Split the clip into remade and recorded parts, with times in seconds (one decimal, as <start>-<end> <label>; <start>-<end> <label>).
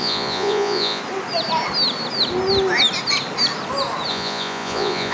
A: 0.0-1.0 remade; 1.0-4.1 recorded; 4.1-5.1 remade